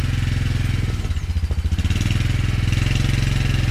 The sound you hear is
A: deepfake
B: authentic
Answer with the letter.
B